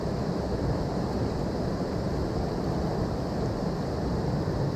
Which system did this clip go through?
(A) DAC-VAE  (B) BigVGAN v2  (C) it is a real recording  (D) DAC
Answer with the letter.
C